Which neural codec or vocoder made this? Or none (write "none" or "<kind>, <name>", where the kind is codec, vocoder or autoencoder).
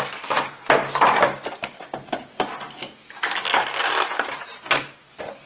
none